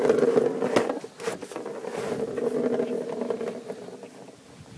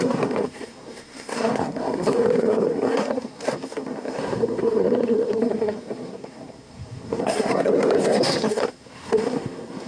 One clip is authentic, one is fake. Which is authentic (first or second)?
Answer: first